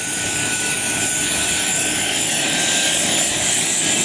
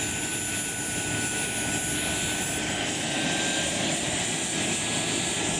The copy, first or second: first